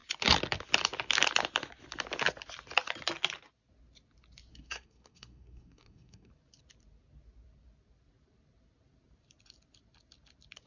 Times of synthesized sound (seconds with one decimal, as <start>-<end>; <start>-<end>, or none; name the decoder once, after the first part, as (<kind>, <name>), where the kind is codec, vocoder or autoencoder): 4.5-6.3 (codec, SNAC)